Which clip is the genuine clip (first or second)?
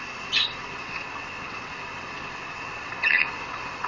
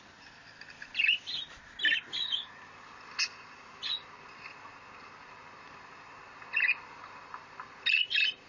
second